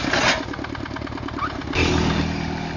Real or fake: real